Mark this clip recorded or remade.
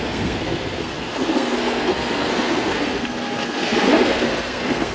remade